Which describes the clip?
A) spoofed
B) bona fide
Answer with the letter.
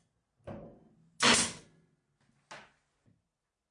B